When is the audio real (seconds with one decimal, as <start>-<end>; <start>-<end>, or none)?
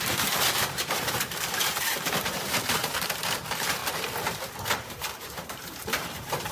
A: 3.8-4.3